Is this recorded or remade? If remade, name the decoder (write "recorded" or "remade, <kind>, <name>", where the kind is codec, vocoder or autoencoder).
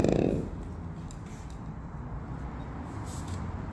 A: recorded